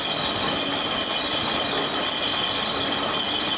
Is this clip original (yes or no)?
yes